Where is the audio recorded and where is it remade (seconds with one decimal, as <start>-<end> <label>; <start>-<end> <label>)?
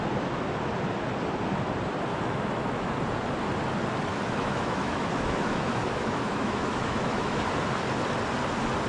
0.0-2.1 recorded; 2.1-2.9 remade; 2.9-4.1 recorded; 4.1-7.4 remade; 7.4-8.9 recorded